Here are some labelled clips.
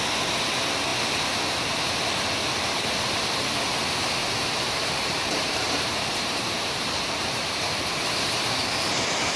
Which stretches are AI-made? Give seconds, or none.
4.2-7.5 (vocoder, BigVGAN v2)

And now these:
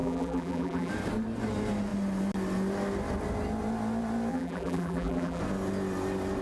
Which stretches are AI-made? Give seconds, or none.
0.0-0.9 (vocoder, BigVGAN v2); 4.3-5.4